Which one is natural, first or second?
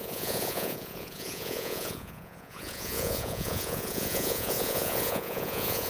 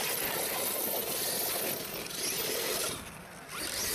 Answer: second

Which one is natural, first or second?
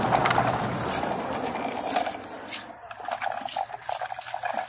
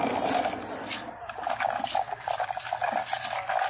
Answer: second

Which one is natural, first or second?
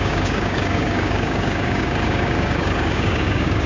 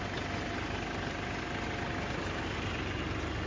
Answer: second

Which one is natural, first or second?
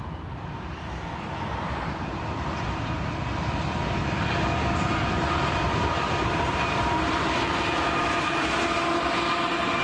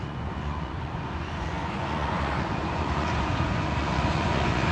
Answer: first